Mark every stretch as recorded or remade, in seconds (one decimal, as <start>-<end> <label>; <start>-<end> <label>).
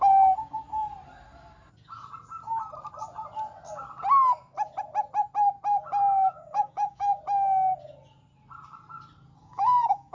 0.0-6.0 recorded; 6.0-7.2 remade; 7.2-9.4 recorded; 9.4-10.1 remade